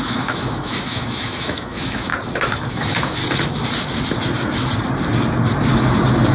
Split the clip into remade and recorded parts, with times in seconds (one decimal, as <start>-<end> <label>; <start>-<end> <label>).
0.0-2.1 remade; 2.1-2.7 recorded; 2.7-3.2 remade; 3.2-6.3 recorded